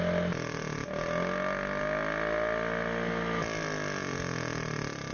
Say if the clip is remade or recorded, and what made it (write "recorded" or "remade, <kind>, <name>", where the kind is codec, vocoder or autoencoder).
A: recorded